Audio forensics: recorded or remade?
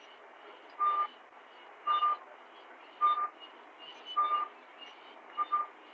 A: recorded